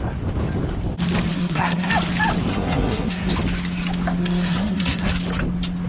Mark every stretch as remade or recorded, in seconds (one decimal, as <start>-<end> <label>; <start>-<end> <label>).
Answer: 0.0-1.3 recorded; 1.3-1.9 remade; 1.9-2.5 recorded; 2.5-3.3 remade; 3.3-4.2 recorded; 4.2-5.1 remade; 5.1-5.9 recorded